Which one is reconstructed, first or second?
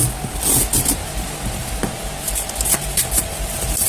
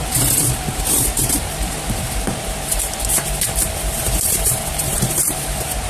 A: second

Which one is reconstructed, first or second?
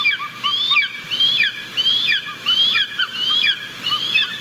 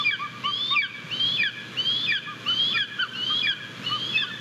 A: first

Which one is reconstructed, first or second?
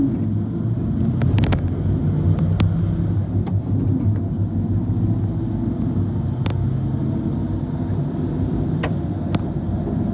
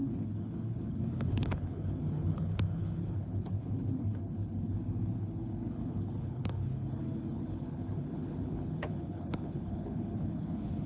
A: second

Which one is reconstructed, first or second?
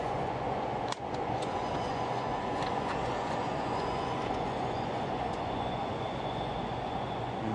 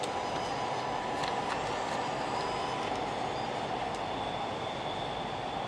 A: first